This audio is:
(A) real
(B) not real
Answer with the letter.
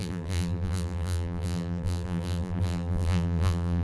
B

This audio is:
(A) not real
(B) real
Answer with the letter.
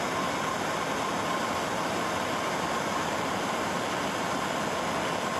B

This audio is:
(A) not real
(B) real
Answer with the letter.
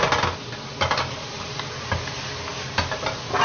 B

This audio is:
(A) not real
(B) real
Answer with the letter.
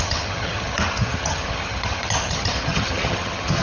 A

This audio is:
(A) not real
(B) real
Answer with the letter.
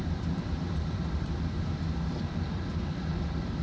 A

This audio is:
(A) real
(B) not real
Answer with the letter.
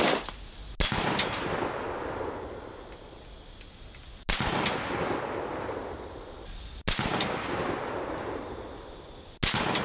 A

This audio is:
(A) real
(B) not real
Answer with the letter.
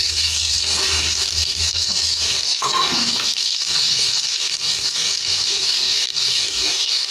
B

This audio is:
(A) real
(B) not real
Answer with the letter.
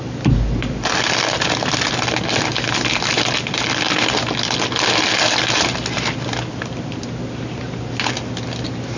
A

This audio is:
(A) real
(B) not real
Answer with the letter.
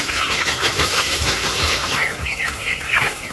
B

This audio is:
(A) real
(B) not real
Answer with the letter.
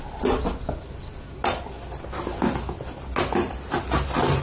A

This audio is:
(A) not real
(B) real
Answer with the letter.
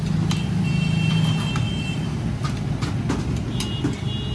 B